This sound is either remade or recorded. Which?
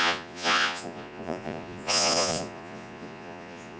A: remade